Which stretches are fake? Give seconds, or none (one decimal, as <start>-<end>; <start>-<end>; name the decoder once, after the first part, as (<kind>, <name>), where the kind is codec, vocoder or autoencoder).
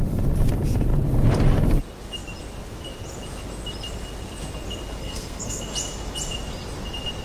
5.0-5.6 (codec, SNAC)